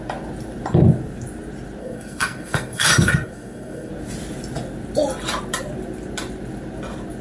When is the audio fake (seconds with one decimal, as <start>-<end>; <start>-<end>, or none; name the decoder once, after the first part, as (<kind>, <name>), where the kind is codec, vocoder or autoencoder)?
1.8-3.9 (codec, SNAC)